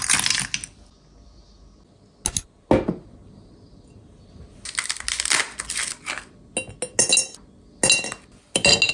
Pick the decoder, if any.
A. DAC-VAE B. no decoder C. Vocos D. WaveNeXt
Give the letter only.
B